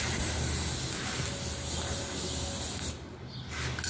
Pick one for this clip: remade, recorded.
recorded